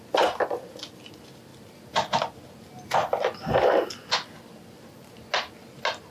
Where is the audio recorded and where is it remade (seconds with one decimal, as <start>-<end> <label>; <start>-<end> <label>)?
0.0-1.5 recorded; 1.5-2.4 remade; 2.4-6.1 recorded